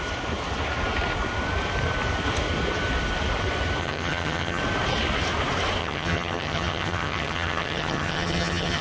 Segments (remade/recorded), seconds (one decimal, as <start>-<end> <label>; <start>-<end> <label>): 0.0-3.8 recorded; 3.8-4.6 remade; 4.6-5.8 recorded; 5.8-8.8 remade